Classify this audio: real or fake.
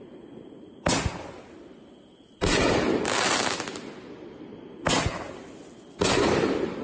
real